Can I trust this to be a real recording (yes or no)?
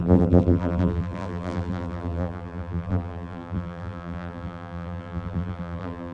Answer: no